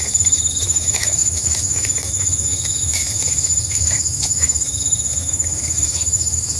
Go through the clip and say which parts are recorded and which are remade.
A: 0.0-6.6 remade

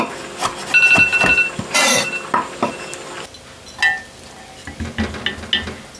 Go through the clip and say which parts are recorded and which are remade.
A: 0.0-6.0 recorded